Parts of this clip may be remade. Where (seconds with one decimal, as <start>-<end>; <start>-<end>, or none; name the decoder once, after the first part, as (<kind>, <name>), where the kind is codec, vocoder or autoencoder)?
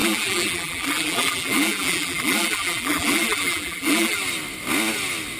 0.0-4.2 (vocoder, BigVGAN v2)